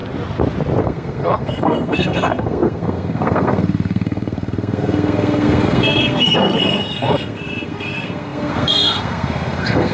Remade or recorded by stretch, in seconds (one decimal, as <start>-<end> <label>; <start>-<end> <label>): 0.0-0.8 recorded; 0.8-9.9 remade